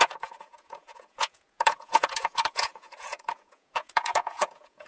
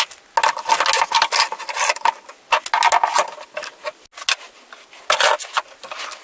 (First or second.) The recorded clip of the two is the second